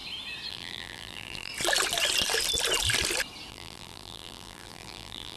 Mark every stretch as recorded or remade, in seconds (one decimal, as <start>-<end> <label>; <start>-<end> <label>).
0.0-0.5 recorded; 0.5-1.5 remade; 1.5-3.5 recorded; 3.5-5.4 remade